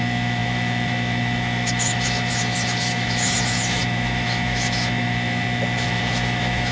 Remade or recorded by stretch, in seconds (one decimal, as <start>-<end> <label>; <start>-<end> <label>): 0.0-6.7 remade